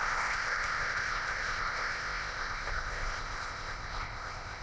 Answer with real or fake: fake